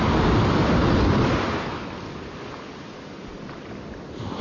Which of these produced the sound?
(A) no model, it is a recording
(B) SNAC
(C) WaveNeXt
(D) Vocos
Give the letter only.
A